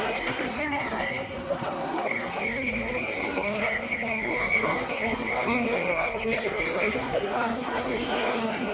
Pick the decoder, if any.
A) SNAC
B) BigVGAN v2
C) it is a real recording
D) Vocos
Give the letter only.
A